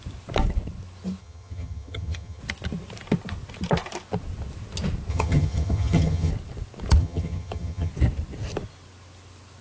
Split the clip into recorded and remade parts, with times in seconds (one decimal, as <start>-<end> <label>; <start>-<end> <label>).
0.0-1.2 recorded; 1.2-2.4 remade; 2.4-5.1 recorded; 5.1-6.3 remade; 6.3-7.0 recorded; 7.0-7.9 remade; 7.9-9.6 recorded